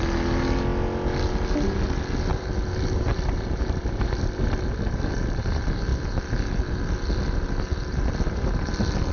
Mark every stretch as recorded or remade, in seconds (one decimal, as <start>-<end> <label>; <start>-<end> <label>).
0.0-2.3 recorded; 2.3-5.4 remade; 5.4-9.1 recorded